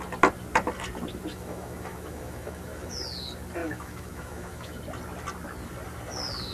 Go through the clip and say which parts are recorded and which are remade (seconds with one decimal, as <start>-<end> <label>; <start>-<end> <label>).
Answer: 0.0-1.3 recorded; 1.3-2.9 remade; 2.9-3.6 recorded; 3.6-4.8 remade; 4.8-6.5 recorded